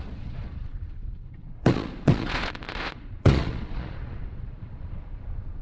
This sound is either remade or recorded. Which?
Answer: remade